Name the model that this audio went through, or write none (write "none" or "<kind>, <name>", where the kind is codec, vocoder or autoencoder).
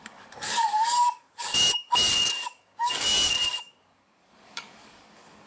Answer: codec, DAC